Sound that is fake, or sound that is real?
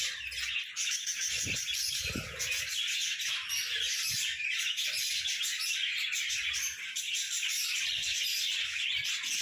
real